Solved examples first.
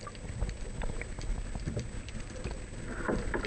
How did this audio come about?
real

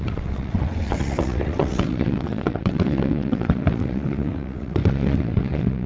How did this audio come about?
fake